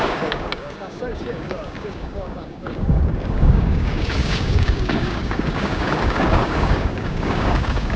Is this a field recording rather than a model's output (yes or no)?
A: no